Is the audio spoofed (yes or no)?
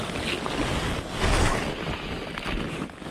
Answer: no